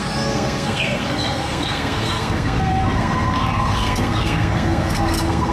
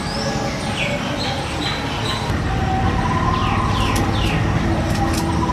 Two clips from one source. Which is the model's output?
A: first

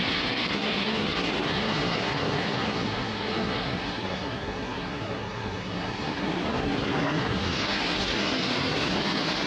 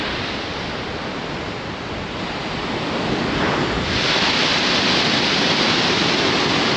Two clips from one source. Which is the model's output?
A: first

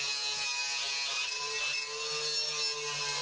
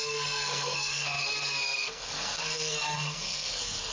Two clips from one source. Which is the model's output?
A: second